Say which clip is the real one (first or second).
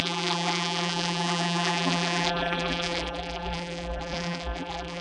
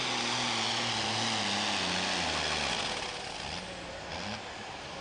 second